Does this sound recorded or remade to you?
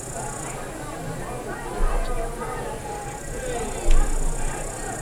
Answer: recorded